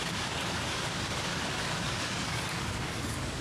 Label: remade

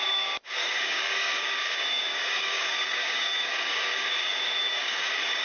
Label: remade